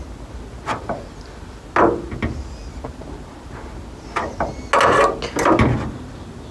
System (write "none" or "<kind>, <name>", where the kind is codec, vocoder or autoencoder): none